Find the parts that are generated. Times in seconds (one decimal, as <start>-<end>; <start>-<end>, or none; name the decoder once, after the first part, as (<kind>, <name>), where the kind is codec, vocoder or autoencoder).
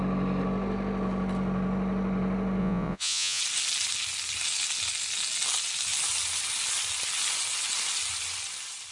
2.6-3.4 (vocoder, Vocos)